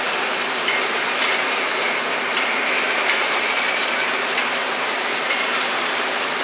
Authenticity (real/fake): fake